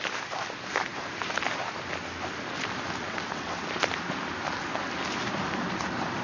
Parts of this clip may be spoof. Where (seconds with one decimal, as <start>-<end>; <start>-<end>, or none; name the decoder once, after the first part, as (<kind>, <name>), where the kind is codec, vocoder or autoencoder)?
3.0-3.6 (vocoder, WaveNeXt)